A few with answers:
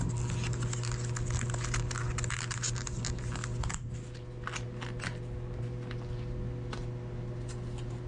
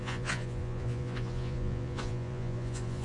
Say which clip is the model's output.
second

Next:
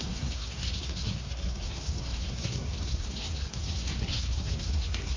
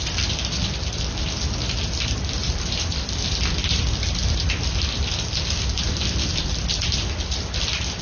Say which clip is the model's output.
first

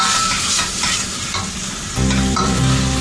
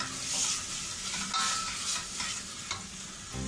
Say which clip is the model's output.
first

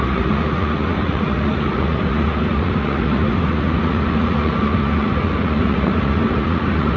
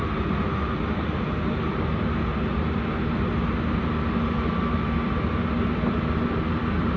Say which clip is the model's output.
first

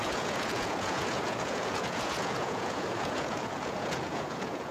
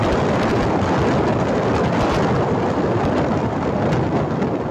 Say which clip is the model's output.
first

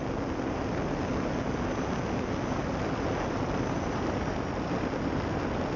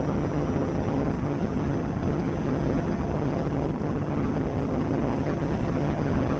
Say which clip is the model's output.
second